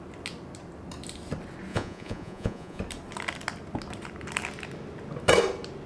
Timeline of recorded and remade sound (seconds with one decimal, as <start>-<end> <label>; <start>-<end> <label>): 0.0-1.7 recorded; 1.7-2.8 remade; 2.8-5.9 recorded